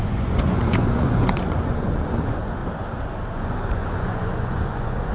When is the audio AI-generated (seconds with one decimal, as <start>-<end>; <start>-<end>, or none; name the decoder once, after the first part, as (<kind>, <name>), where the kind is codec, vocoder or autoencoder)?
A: 0.0-2.6 (vocoder, Vocos); 3.3-5.1